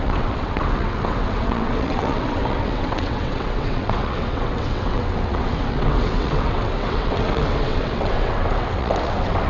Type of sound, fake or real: fake